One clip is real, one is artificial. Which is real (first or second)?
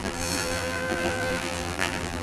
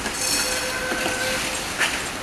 second